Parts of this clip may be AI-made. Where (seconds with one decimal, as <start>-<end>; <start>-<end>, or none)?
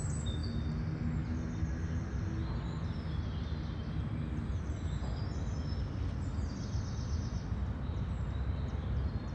none